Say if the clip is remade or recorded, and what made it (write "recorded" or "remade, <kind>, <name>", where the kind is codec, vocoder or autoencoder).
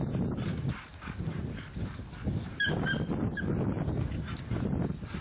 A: recorded